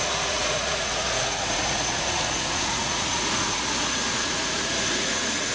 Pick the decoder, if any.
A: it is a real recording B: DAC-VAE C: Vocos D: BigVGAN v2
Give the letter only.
C